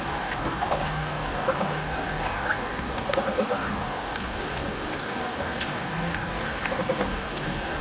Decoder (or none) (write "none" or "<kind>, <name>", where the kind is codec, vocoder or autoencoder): codec, DAC